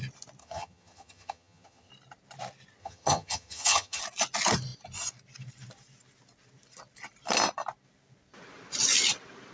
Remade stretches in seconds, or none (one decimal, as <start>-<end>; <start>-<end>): 0.4-1.9; 2.8-4.0